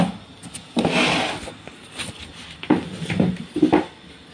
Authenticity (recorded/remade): recorded